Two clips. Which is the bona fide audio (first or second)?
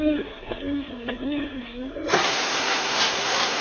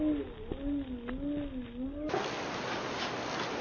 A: second